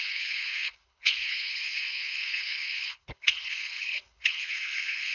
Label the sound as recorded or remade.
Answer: remade